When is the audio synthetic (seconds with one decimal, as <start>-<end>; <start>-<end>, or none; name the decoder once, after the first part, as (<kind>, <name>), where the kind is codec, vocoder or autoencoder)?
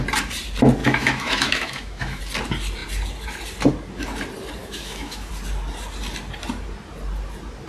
0.8-2.2 (autoencoder, DAC-VAE); 4.6-5.3